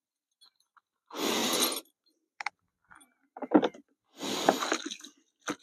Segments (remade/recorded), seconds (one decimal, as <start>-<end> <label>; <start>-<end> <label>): 0.0-5.6 recorded